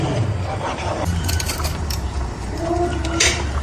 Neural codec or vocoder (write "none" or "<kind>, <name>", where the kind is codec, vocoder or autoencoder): vocoder, BigVGAN v2